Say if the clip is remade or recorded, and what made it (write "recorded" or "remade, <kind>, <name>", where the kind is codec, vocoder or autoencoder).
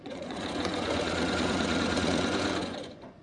remade, vocoder, Vocos